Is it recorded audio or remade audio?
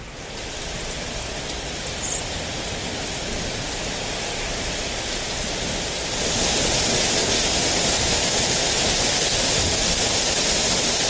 recorded